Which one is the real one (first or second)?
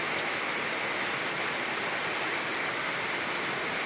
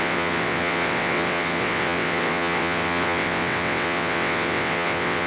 first